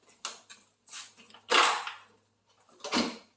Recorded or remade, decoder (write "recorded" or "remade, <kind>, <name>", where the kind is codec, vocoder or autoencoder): recorded